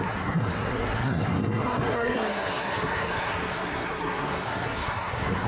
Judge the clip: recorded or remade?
remade